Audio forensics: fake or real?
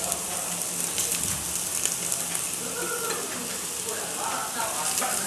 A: real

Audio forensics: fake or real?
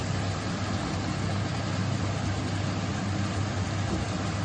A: real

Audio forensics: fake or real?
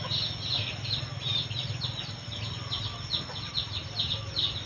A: real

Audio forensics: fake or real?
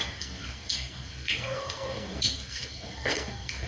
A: fake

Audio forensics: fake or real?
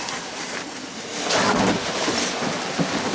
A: real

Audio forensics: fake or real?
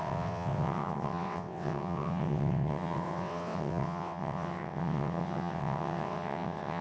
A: fake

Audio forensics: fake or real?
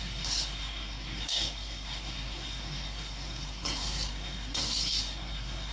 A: fake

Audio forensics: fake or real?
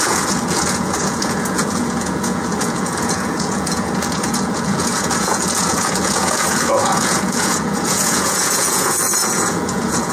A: fake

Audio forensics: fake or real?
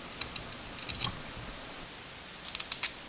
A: real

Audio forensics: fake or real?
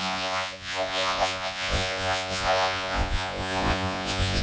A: fake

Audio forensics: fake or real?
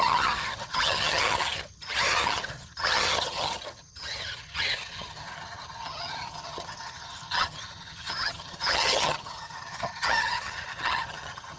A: fake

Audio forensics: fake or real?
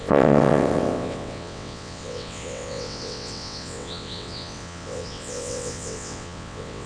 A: fake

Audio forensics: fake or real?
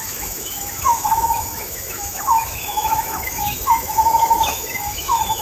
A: fake